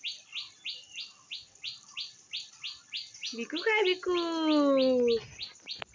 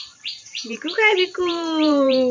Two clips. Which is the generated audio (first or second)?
second